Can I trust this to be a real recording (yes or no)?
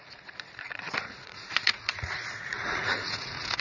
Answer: no